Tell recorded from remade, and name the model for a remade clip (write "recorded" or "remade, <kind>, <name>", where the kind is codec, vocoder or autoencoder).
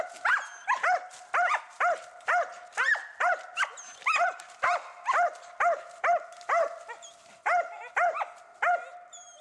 recorded